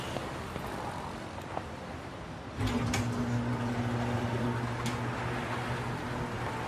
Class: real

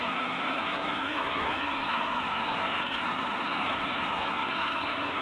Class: fake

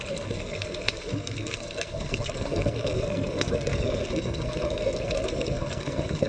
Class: fake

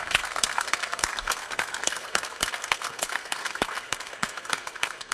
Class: fake